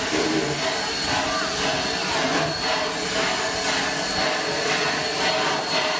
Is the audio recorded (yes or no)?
yes